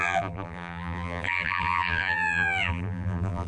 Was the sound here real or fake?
fake